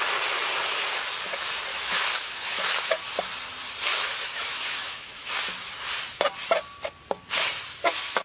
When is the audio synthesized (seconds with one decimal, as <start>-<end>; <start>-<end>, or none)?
1.7-3.0; 3.9-5.3